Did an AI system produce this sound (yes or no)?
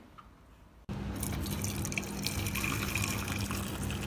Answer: no